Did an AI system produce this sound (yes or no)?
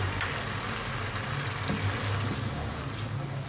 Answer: no